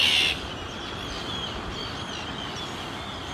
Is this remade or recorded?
recorded